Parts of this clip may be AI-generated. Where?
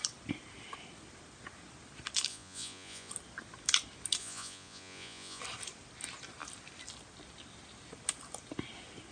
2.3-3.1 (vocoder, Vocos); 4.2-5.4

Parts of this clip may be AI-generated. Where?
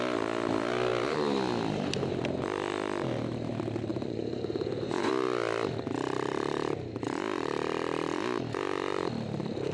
3.9-5.1 (vocoder, Vocos)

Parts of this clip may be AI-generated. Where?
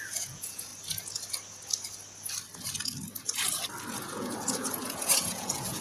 0.0-0.7 (vocoder, Vocos); 4.0-5.8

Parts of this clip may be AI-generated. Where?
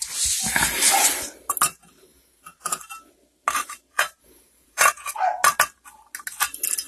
2.1-2.8 (vocoder, Vocos); 3.9-5.1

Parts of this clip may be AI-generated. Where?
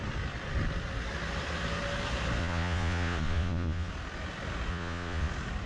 2.4-3.9 (vocoder, Vocos); 4.7-5.3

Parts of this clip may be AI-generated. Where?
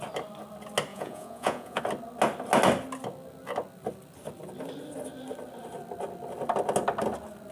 0.9-1.8 (vocoder, Vocos)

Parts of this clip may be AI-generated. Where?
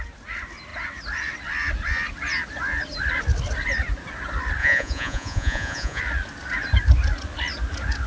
4.6-6.0 (vocoder, Vocos)